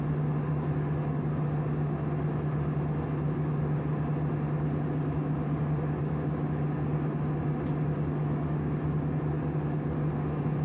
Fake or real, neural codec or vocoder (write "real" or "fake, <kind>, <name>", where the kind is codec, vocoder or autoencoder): real